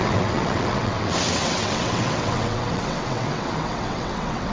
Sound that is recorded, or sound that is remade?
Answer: remade